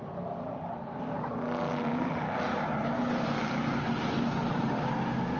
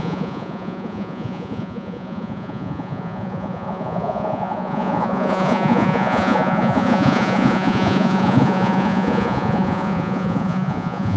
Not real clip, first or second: second